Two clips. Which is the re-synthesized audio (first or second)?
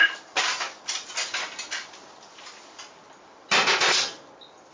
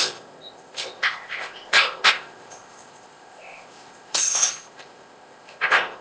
second